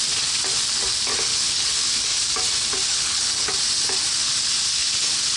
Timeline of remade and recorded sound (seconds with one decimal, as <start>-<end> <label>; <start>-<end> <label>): 0.0-1.3 recorded; 1.3-1.9 remade; 1.9-2.9 recorded; 2.9-3.5 remade; 3.5-5.4 recorded